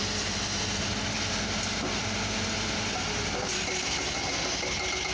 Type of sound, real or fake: real